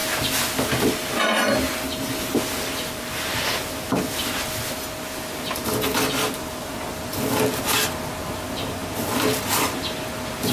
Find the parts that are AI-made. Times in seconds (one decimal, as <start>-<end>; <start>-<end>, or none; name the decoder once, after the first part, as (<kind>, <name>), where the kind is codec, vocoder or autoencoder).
none